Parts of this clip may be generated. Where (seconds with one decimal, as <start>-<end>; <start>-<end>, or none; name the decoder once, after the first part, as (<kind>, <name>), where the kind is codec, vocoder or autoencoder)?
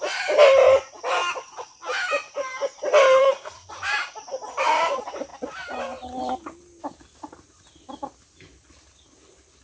3.2-3.7 (codec, SNAC)